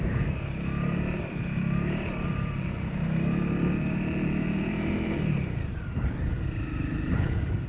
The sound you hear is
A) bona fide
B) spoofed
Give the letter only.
B